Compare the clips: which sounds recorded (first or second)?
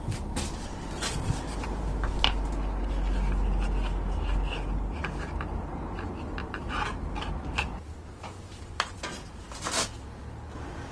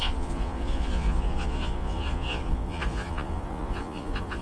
first